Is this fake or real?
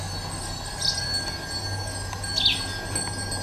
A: real